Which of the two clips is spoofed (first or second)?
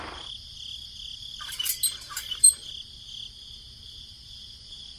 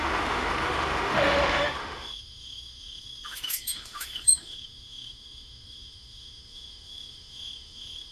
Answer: second